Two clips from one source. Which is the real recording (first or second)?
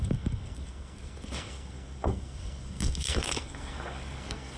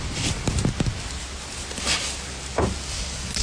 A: second